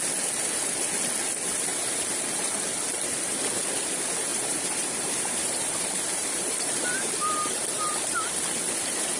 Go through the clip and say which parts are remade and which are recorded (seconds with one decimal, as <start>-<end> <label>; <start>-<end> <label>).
0.0-1.7 recorded; 1.7-2.2 remade; 2.2-4.3 recorded; 4.3-8.1 remade; 8.1-9.2 recorded